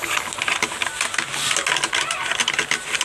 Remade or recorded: recorded